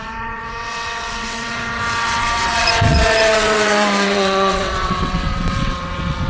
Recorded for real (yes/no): no